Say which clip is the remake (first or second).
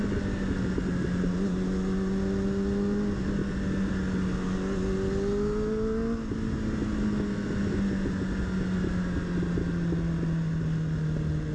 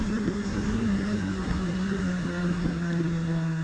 second